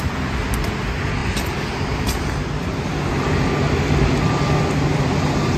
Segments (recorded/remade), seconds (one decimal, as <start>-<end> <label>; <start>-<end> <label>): 0.0-5.6 recorded